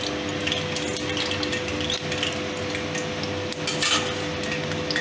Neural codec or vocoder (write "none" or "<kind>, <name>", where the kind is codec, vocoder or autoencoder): none